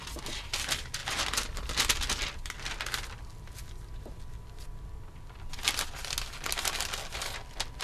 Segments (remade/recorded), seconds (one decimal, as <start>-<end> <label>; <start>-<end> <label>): 0.0-7.8 recorded